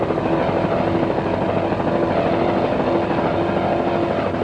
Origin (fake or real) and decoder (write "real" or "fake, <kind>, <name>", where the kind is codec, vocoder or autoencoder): real